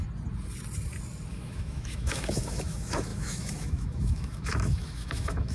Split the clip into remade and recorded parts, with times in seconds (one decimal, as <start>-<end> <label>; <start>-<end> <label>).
0.0-1.3 recorded; 1.3-5.5 remade